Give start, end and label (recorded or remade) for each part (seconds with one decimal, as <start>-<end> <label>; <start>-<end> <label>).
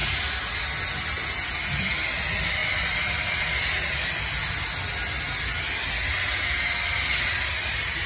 0.0-8.1 recorded